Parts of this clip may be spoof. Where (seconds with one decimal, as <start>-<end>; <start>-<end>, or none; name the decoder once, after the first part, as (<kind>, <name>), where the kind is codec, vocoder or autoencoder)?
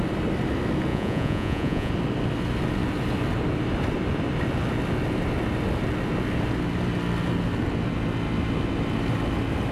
0.9-1.9 (vocoder, Vocos)